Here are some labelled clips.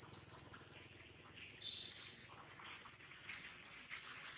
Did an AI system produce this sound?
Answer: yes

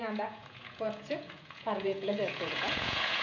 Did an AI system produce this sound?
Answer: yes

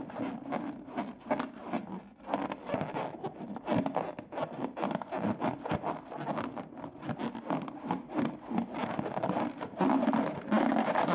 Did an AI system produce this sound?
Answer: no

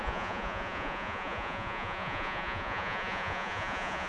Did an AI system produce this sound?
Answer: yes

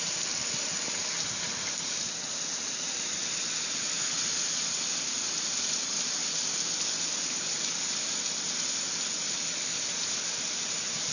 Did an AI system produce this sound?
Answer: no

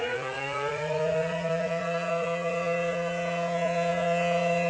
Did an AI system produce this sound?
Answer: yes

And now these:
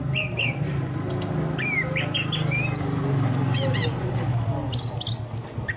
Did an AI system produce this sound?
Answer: no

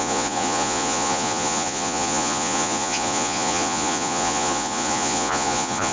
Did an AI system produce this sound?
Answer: yes